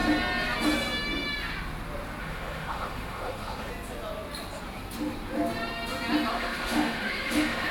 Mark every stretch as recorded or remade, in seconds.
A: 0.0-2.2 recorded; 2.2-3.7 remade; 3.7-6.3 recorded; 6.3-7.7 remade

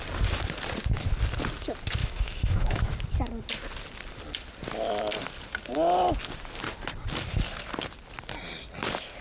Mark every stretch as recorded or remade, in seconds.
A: 0.0-2.0 recorded; 2.0-2.8 remade; 2.8-9.2 recorded

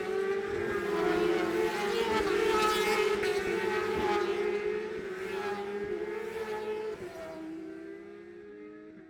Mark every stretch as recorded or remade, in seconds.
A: 0.0-9.1 recorded

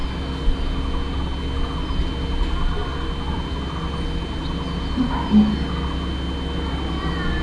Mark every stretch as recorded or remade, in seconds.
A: 0.0-7.4 recorded